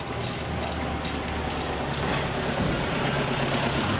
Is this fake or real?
real